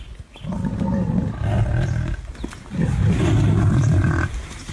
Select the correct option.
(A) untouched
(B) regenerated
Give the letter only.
A